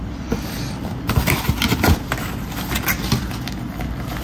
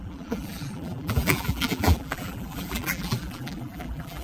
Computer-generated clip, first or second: second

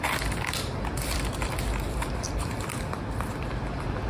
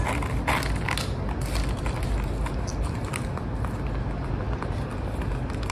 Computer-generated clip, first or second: first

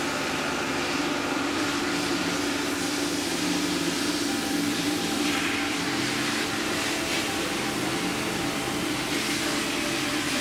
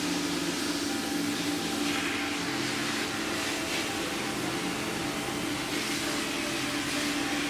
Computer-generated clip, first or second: first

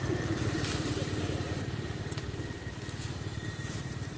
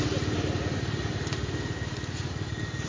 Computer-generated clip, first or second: first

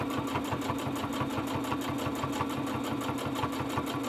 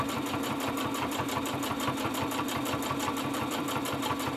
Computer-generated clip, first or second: second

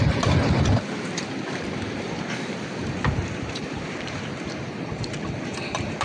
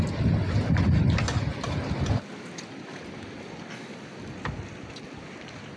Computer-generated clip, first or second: first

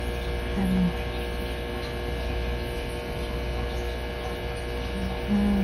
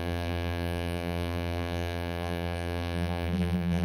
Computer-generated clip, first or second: second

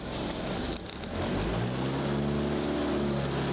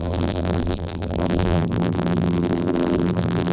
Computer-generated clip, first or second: second